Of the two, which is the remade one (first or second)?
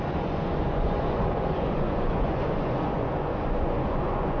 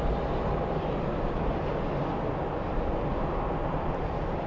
first